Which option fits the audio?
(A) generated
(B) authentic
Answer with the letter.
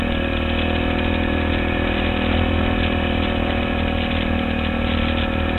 B